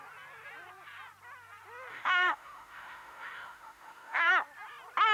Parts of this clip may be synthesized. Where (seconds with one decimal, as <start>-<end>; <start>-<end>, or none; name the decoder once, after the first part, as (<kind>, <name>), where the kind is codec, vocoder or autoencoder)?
1.9-4.3 (autoencoder, DAC-VAE)